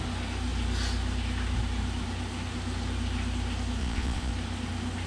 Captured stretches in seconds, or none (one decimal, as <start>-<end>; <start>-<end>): 0.0-3.8; 4.3-5.1